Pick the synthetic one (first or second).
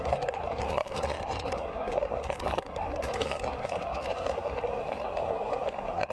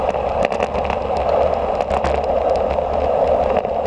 first